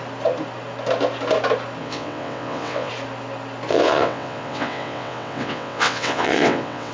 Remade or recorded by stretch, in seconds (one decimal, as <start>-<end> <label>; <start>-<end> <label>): 0.0-1.8 recorded; 1.8-2.9 remade; 2.9-3.7 recorded; 3.7-6.9 remade